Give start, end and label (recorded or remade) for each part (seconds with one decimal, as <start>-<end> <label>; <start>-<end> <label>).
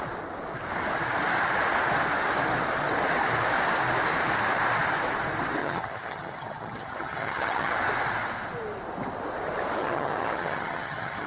0.0-5.6 recorded; 5.6-7.8 remade; 7.8-9.8 recorded; 9.8-11.3 remade